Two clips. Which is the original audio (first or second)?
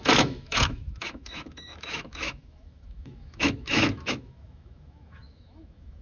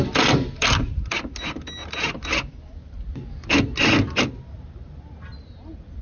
second